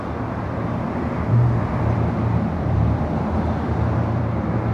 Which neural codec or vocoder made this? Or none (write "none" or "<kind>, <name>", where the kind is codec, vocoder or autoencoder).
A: vocoder, BigVGAN v2